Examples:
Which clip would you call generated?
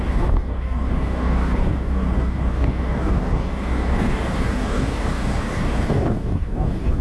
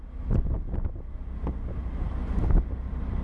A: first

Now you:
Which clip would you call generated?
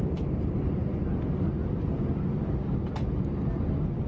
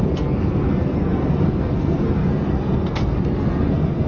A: second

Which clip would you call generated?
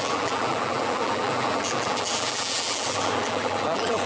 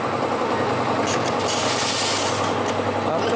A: first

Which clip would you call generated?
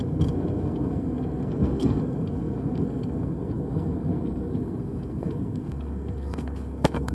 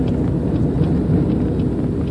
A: first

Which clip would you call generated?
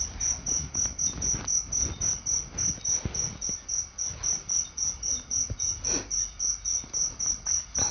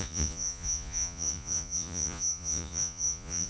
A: second